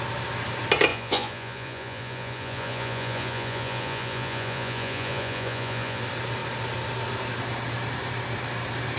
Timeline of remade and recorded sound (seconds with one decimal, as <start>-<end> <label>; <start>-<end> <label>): 0.0-0.9 recorded; 0.9-6.0 remade; 6.0-9.0 recorded